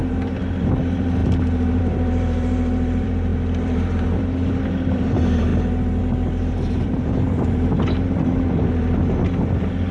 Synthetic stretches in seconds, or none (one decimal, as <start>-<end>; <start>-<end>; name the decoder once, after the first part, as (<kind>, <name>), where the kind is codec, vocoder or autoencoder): 0.0-5.5 (vocoder, BigVGAN v2); 6.0-9.9